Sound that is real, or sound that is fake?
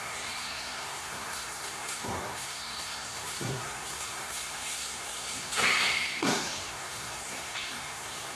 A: fake